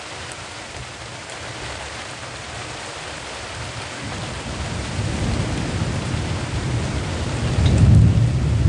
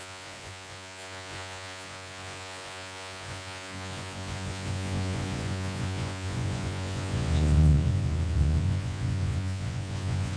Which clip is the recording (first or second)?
first